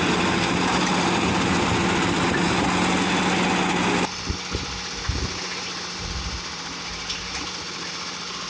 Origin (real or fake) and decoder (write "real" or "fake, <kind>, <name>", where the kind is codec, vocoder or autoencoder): real